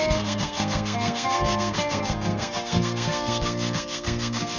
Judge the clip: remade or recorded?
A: remade